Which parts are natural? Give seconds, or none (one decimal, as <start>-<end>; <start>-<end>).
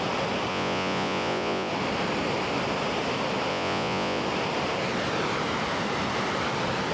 0.0-0.5; 1.7-3.5; 4.2-6.9